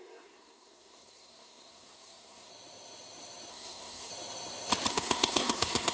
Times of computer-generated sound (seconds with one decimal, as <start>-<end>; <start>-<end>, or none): 0.0-2.5; 3.5-4.1; 4.9-5.9